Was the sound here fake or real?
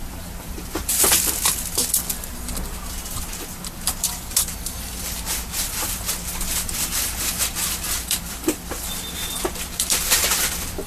fake